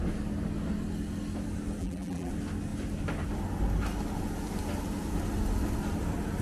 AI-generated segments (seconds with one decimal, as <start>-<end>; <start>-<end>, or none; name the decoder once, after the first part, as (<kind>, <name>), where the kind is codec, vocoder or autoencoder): 1.8-2.3 (vocoder, BigVGAN v2)